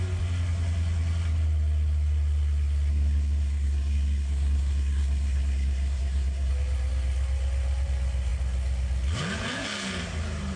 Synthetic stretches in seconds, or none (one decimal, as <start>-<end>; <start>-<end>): 2.9-6.5